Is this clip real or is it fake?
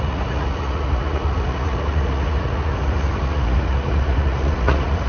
fake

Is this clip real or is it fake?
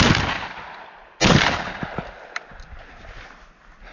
real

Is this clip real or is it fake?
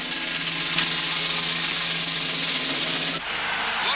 real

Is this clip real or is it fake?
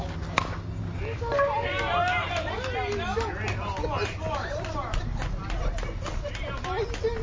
real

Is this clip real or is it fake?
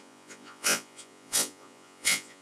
fake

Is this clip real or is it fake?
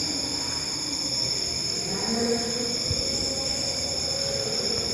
real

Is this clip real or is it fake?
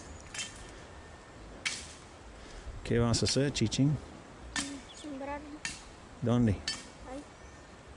real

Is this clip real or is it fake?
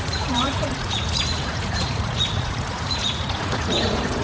fake